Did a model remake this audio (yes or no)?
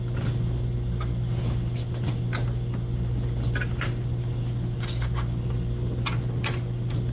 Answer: no